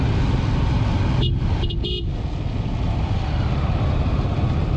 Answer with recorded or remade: recorded